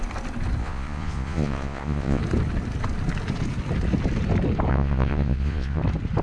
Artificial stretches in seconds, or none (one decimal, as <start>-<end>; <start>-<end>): 0.6-2.2; 4.7-5.8